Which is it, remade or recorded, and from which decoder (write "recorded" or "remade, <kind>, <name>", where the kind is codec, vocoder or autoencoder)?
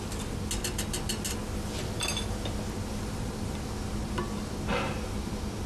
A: recorded